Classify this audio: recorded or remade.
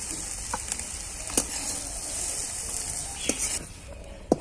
recorded